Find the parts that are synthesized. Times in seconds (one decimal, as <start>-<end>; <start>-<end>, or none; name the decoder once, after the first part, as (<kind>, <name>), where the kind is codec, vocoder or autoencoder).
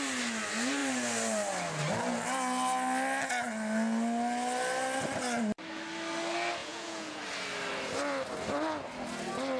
6.6-7.2 (vocoder, Vocos)